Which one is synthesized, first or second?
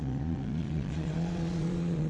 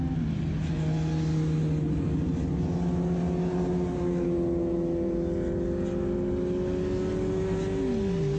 first